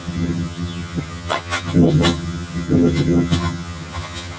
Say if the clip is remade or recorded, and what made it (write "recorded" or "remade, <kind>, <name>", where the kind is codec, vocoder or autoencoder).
remade, vocoder, HiFi-GAN